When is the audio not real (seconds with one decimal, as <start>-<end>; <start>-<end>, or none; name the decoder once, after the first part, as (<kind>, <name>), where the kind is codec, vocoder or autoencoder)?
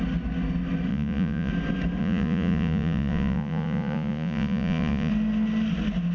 0.9-1.5 (vocoder, Vocos); 2.0-5.1